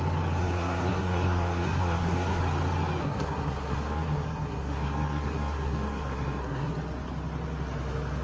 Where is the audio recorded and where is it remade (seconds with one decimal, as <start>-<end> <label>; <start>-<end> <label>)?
0.0-0.4 recorded; 0.4-2.4 remade; 2.4-3.0 recorded; 3.0-6.7 remade; 6.7-8.2 recorded